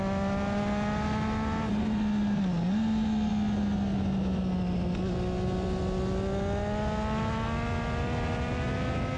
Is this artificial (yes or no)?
no